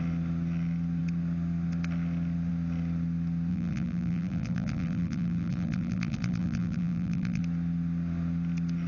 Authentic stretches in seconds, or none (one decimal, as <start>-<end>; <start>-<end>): 0.0-3.5; 7.4-8.9